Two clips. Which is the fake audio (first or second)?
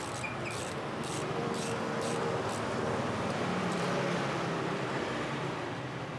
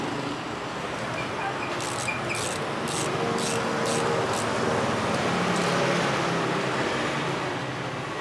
first